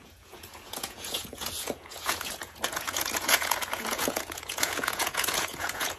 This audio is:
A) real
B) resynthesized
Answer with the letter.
B